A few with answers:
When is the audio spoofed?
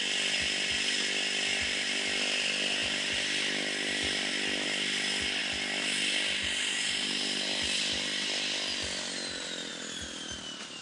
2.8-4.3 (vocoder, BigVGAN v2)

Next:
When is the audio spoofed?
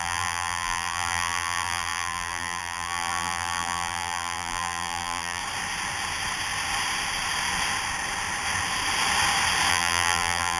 0.0-5.4 (vocoder, BigVGAN v2); 9.7-10.6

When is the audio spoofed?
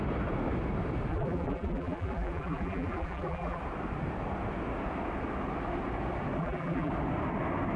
1.1-3.6 (vocoder, BigVGAN v2); 6.4-6.9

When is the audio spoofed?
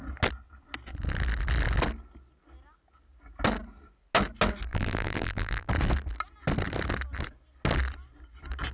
4.7-5.7 (vocoder, BigVGAN v2)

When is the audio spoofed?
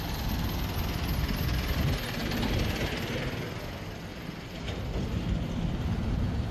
4.1-4.9 (vocoder, BigVGAN v2)